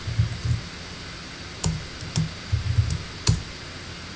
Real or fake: real